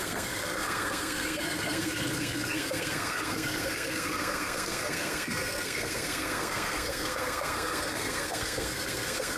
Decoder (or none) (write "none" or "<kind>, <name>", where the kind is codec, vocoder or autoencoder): codec, SNAC